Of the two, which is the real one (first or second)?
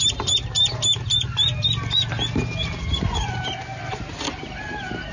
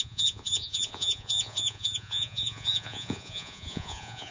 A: first